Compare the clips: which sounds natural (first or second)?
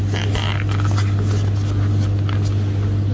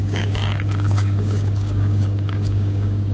first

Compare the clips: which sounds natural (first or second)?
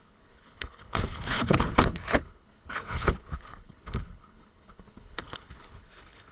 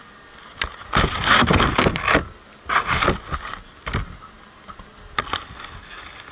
second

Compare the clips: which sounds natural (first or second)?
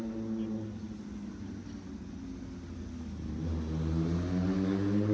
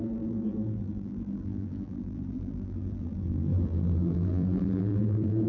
first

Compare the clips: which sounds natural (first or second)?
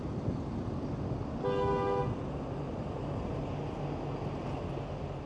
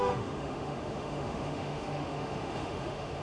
first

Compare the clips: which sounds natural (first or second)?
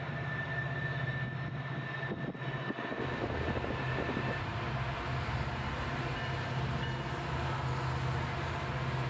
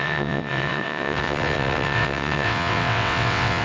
first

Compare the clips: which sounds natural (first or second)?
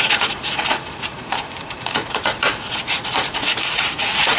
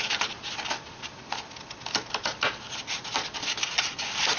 second